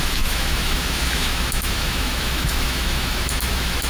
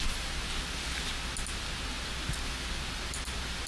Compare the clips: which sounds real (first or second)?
second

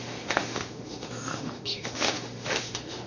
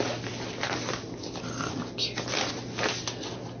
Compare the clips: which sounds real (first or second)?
second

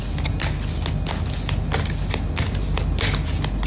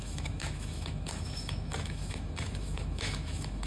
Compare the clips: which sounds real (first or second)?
first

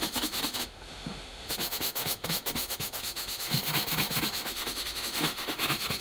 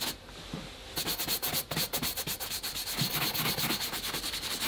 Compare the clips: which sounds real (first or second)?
second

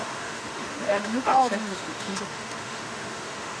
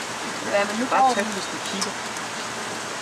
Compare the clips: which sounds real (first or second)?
second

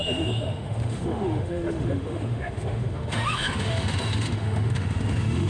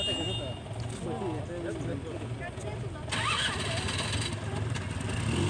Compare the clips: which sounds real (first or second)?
second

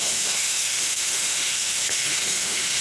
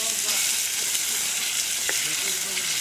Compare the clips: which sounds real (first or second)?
second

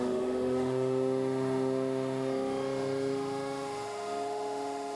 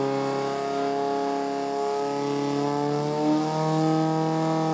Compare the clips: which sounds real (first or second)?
second